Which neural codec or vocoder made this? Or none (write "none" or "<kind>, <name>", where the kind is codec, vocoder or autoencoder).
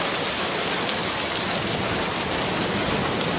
none